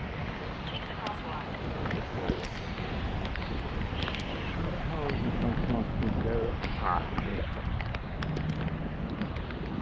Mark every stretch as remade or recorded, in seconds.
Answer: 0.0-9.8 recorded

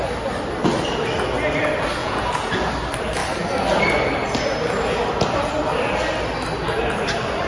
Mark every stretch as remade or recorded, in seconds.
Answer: 0.0-2.0 recorded; 2.0-2.7 remade; 2.7-7.5 recorded

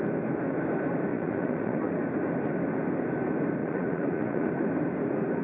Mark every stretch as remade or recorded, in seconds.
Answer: 0.0-1.1 recorded; 1.1-1.9 remade; 1.9-3.6 recorded; 3.6-4.5 remade; 4.5-5.4 recorded